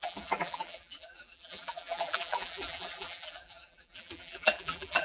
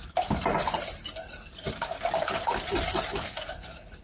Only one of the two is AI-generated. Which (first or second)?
first